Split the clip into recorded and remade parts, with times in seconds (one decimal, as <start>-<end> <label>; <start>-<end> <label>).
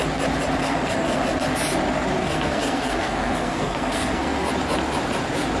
0.0-0.6 recorded; 0.6-1.2 remade; 1.2-2.2 recorded; 2.2-4.5 remade; 4.5-5.6 recorded